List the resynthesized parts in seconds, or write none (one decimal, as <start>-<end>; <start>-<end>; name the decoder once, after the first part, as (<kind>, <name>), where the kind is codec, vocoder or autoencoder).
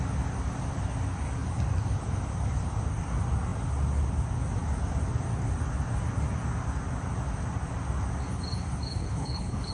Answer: 9.0-9.7 (codec, HILCodec)